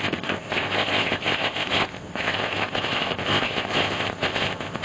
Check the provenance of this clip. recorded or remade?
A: remade